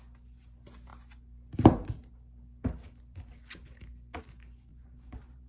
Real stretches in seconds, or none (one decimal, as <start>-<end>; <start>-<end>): 0.0-4.7